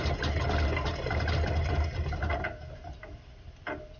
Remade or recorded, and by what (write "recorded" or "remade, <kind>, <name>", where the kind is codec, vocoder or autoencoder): recorded